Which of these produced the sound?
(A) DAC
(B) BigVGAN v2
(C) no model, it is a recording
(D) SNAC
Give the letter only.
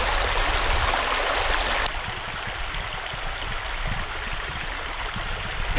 C